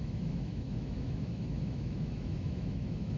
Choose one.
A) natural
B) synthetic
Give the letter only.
B